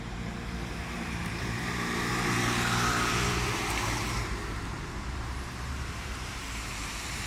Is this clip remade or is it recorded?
remade